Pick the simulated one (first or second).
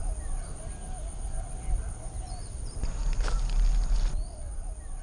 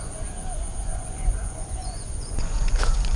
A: second